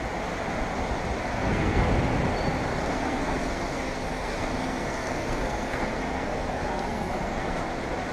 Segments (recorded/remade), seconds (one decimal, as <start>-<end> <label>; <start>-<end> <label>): 0.0-1.2 recorded; 1.2-1.9 remade; 1.9-2.7 recorded; 2.7-7.6 remade; 7.6-8.1 recorded